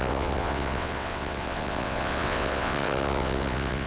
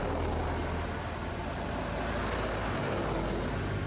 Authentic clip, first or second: second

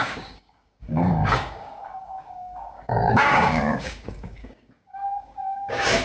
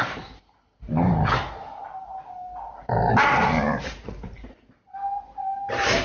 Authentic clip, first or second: second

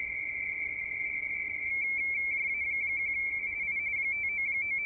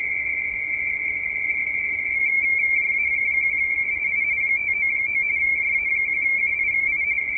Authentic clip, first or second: first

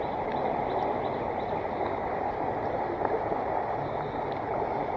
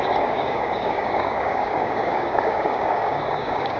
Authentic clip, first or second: first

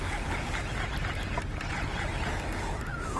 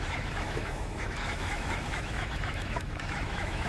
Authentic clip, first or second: first